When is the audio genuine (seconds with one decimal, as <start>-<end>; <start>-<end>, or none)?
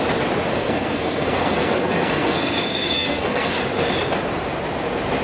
0.0-0.5; 3.6-5.2